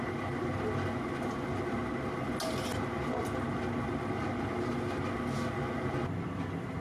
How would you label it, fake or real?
real